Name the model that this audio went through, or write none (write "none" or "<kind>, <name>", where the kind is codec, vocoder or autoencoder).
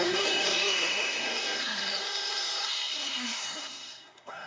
codec, SNAC